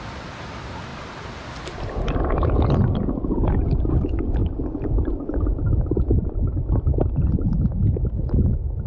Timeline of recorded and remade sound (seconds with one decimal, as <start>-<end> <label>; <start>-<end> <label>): 0.0-4.4 recorded; 4.4-7.0 remade; 7.0-8.9 recorded